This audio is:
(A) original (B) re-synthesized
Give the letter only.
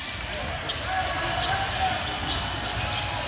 A